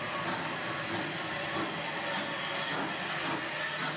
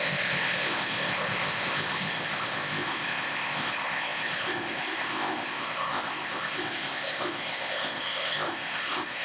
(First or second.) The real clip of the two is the first